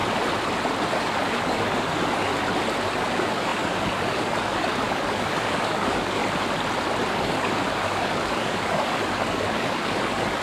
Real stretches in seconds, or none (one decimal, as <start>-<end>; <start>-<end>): 0.0-0.9; 2.3-3.0; 6.2-7.1